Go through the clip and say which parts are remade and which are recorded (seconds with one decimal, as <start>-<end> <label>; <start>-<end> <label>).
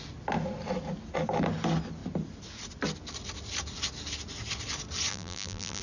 0.0-5.1 recorded; 5.1-5.8 remade